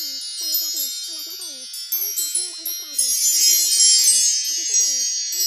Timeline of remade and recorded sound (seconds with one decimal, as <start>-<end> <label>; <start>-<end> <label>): 0.0-5.5 recorded